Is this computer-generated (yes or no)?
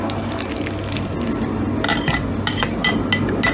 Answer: no